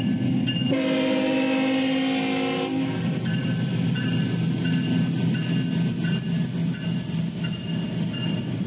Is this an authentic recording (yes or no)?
yes